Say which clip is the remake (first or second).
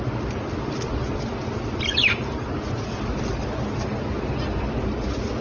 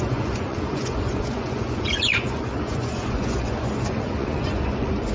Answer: second